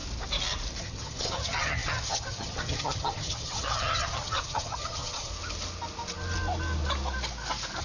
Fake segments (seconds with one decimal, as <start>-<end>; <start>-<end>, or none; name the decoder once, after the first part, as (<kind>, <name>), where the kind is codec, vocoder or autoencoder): 0.8-5.3 (vocoder, HiFi-GAN)